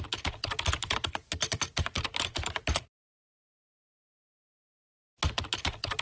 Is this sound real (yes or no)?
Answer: yes